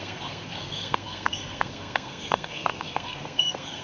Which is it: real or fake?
fake